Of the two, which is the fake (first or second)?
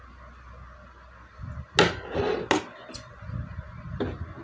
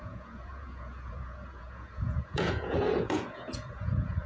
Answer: second